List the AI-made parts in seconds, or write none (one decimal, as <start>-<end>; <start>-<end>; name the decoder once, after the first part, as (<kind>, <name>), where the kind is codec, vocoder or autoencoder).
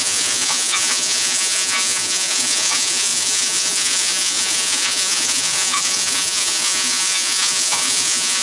0.0-8.4 (vocoder, Vocos)